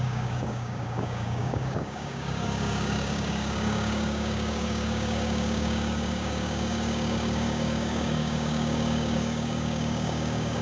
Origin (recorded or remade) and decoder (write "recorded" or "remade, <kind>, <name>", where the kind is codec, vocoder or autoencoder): remade, codec, DAC